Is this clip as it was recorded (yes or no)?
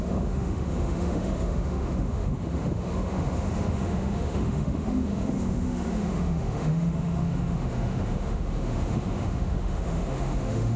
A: no